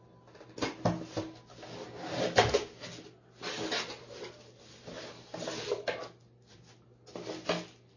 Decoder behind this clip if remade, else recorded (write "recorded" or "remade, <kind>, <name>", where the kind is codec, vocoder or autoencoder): recorded